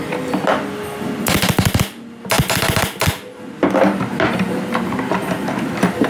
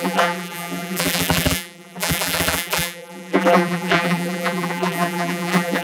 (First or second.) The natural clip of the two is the first